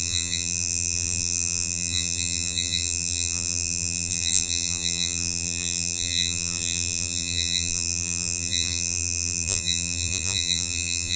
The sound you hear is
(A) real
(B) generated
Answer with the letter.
B